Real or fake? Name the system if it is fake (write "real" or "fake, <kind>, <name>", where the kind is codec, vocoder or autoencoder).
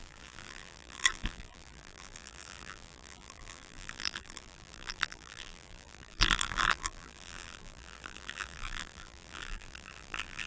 fake, vocoder, BigVGAN v2